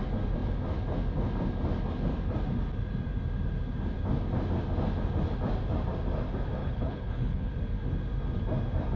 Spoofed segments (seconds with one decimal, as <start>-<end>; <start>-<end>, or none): 6.6-7.5